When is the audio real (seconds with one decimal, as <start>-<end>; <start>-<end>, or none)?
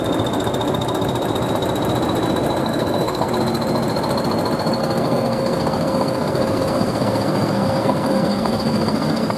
0.0-2.6; 3.3-4.8